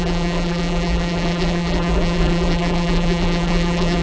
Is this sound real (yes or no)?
no